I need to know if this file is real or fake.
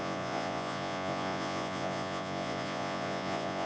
fake